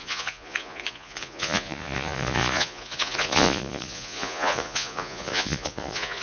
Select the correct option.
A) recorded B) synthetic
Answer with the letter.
B